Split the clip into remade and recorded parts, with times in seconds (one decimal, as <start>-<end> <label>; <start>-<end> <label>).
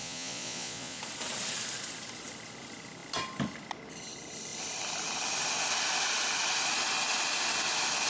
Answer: 0.0-1.0 remade; 1.0-8.1 recorded